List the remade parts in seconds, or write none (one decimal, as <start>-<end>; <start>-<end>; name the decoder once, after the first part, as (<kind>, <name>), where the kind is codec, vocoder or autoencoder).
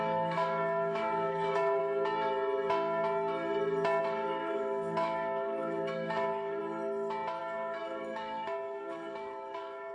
0.0-1.8 (codec, DAC); 4.0-6.6; 7.4-9.9